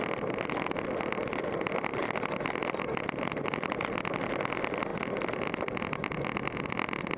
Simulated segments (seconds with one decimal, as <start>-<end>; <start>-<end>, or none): none